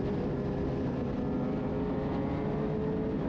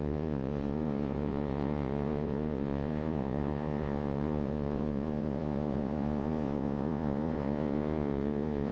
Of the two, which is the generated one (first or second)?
second